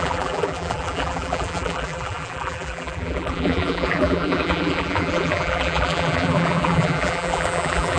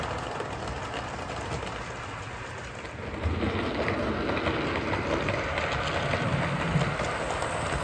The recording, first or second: second